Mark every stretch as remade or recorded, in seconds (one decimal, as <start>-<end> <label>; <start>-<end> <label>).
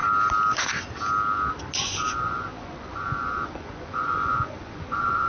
0.0-1.8 recorded; 1.8-5.3 remade